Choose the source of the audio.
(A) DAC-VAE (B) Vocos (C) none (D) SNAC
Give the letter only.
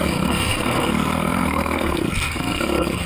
D